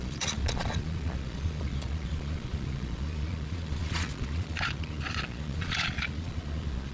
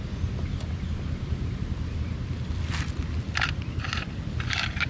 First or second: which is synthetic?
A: first